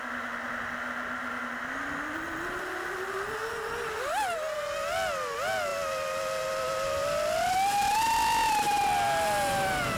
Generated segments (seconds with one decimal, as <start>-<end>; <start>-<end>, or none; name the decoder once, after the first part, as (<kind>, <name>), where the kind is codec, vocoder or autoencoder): none